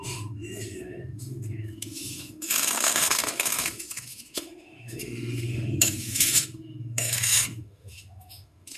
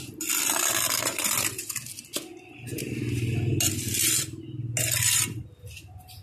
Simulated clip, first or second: first